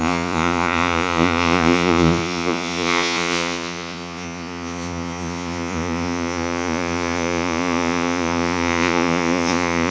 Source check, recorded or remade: remade